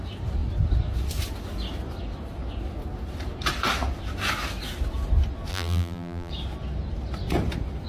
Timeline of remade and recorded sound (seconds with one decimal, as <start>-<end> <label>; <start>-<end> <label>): 0.0-5.5 recorded; 5.5-6.3 remade; 6.3-7.9 recorded

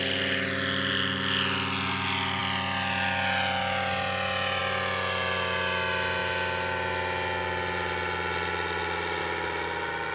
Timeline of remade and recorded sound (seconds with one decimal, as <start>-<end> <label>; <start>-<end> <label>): 0.0-10.1 recorded

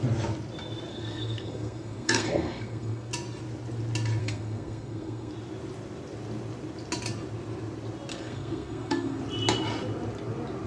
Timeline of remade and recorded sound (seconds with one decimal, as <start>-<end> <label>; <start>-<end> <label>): 0.0-0.9 recorded; 0.9-3.1 remade; 3.1-4.2 recorded; 4.2-5.3 remade; 5.3-8.1 recorded; 8.1-9.2 remade; 9.2-10.7 recorded